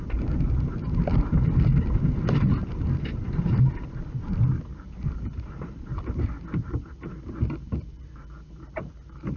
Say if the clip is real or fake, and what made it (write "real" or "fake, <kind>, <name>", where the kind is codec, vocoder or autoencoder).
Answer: fake, vocoder, BigVGAN v2